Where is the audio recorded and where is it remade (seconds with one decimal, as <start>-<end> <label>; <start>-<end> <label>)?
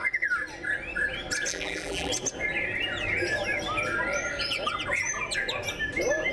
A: 0.0-1.5 recorded; 1.5-2.1 remade; 2.1-6.3 recorded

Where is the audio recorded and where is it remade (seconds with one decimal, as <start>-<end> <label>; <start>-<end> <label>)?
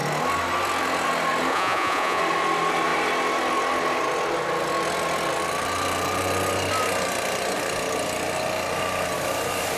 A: 0.0-1.5 recorded; 1.5-2.2 remade; 2.2-9.8 recorded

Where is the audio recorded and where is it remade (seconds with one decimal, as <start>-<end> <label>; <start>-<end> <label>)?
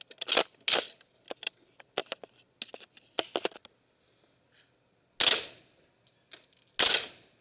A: 0.0-7.4 recorded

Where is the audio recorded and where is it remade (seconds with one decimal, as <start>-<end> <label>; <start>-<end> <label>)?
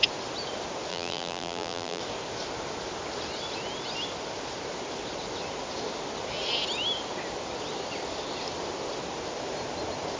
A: 0.0-0.9 recorded; 0.9-2.0 remade; 2.0-10.2 recorded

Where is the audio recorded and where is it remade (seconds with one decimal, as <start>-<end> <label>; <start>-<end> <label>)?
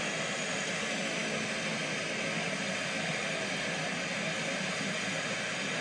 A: 0.0-5.8 recorded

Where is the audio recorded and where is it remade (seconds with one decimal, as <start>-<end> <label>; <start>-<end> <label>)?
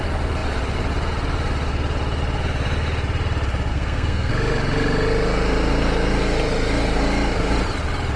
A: 0.0-3.7 recorded; 3.7-4.3 remade; 4.3-8.2 recorded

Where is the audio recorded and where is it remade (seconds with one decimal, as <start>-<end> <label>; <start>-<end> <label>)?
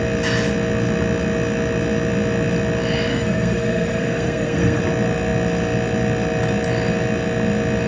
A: 0.0-3.1 recorded; 3.1-4.8 remade; 4.8-7.9 recorded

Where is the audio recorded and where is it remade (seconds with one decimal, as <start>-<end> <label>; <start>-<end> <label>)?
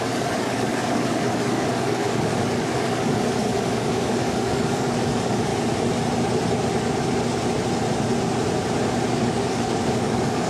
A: 0.0-5.5 remade; 5.5-9.1 recorded; 9.1-10.5 remade